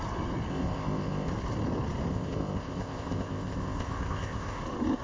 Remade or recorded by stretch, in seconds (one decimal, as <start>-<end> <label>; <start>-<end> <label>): 0.0-0.5 recorded; 0.5-1.3 remade; 1.3-2.1 recorded; 2.1-4.6 remade; 4.6-5.0 recorded